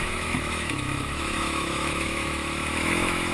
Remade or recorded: remade